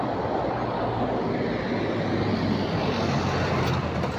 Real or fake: real